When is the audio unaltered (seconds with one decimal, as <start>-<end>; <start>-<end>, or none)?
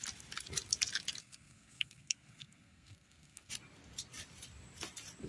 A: 0.0-1.2; 3.5-5.3